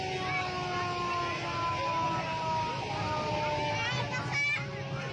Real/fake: real